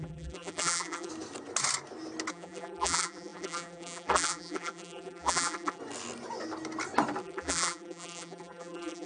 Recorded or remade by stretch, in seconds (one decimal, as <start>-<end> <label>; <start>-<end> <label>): 0.0-1.1 remade; 1.1-2.3 recorded; 2.3-5.8 remade; 5.8-7.2 recorded; 7.2-9.1 remade